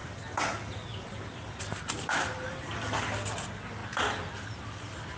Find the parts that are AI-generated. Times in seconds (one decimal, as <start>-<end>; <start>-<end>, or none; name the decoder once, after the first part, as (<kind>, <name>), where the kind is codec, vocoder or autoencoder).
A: 0.0-3.0 (vocoder, BigVGAN v2)